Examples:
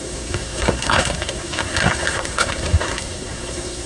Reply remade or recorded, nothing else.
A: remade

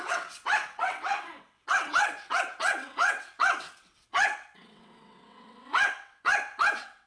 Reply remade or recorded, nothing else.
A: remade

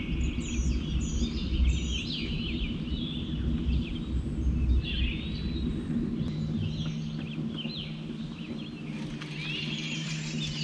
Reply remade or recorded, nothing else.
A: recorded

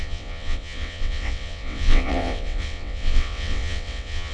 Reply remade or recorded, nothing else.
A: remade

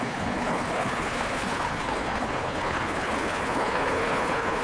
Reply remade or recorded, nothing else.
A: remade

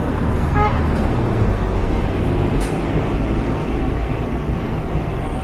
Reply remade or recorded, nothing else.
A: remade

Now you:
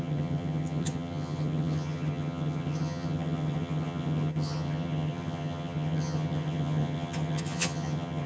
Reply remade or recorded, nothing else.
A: remade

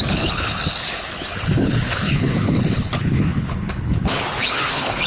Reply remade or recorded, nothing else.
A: remade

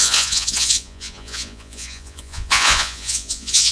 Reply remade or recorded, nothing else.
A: remade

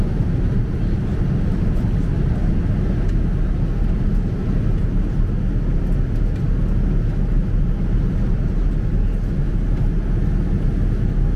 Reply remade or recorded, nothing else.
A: recorded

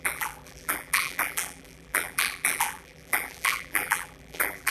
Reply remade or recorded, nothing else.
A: remade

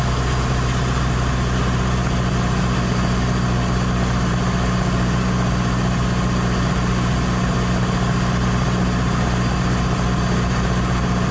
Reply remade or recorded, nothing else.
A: recorded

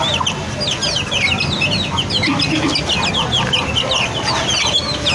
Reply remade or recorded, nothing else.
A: recorded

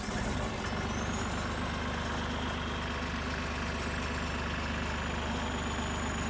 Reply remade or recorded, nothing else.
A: recorded